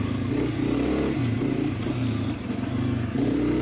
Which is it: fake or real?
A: real